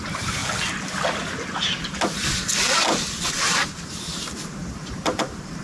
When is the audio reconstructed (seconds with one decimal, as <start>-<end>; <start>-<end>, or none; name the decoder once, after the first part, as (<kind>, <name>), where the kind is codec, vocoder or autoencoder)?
0.0-0.4 (vocoder, BigVGAN v2); 3.8-5.6